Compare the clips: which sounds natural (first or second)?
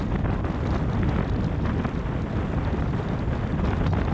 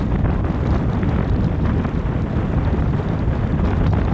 first